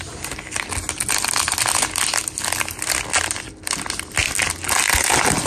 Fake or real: real